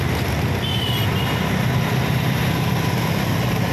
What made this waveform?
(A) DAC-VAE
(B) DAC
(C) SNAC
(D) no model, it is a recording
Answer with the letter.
D